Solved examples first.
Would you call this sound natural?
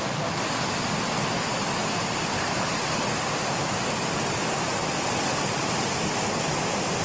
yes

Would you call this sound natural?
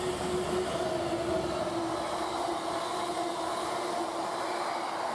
yes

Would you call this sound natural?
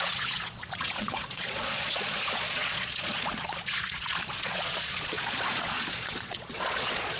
no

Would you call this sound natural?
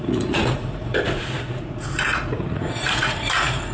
no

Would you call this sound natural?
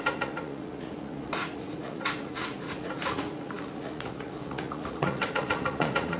no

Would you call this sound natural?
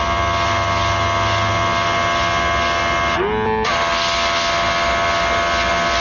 yes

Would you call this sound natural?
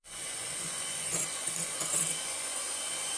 no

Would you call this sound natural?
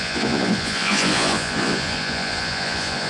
no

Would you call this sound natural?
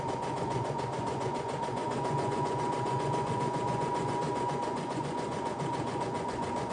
no